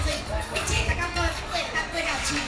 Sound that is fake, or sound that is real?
fake